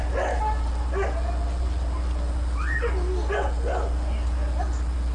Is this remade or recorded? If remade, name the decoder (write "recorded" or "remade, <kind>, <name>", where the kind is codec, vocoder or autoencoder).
recorded